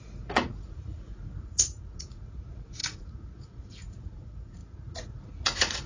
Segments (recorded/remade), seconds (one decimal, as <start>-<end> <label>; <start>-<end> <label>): 0.0-5.9 remade